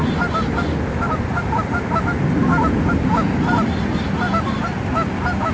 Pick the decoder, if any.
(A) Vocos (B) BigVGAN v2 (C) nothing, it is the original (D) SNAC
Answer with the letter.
C